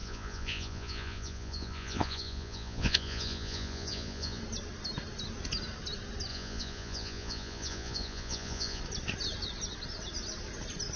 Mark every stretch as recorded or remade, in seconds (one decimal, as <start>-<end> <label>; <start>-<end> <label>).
0.0-4.4 remade; 4.4-6.3 recorded; 6.3-8.8 remade; 8.8-11.0 recorded